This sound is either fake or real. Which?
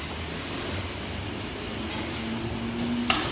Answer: real